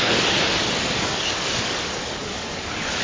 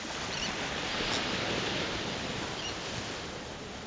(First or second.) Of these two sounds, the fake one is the first